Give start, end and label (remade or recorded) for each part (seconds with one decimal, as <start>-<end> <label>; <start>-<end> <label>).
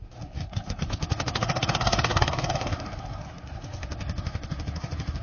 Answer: 0.0-5.2 remade